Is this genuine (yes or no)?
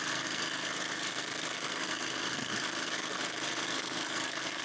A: no